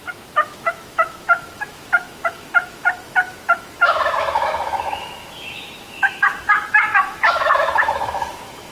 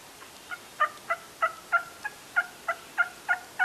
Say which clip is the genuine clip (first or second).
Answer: second